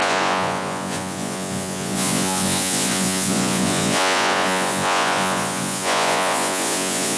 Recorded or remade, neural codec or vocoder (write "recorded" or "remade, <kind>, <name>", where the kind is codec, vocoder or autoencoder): remade, vocoder, Vocos